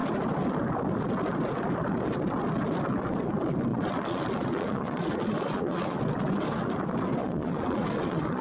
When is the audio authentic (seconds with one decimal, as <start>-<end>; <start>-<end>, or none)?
0.0-3.7; 6.0-7.2